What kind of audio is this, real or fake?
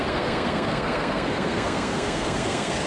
fake